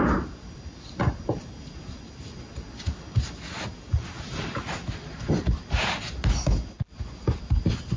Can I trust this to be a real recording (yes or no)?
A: yes